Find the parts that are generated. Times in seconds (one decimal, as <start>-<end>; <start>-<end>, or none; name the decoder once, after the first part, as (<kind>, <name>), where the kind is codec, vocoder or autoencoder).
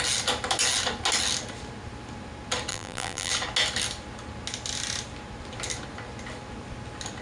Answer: 2.7-3.3 (vocoder, BigVGAN v2)